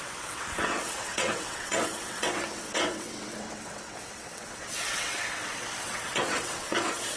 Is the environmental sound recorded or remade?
remade